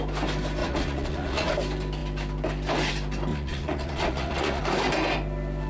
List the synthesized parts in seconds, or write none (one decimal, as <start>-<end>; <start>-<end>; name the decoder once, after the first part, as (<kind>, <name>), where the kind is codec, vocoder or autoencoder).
0.6-1.5 (vocoder, Vocos); 3.3-4.6